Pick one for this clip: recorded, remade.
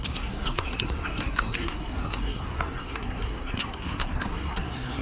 remade